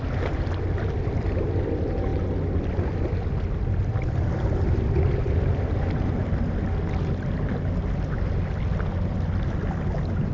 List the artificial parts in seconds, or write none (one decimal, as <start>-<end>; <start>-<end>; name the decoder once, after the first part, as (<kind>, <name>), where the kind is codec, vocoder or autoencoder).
none